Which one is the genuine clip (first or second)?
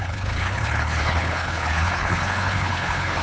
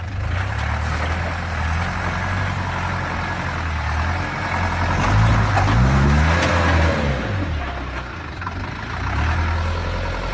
second